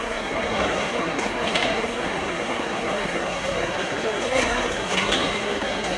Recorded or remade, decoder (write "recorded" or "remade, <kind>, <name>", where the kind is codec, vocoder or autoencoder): remade, codec, SNAC